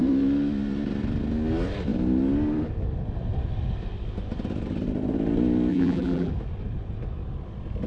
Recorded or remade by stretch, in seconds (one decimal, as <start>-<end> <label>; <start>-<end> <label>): 0.0-5.7 recorded; 5.7-6.3 remade; 6.3-7.9 recorded